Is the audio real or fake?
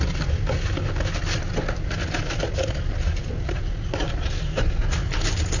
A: real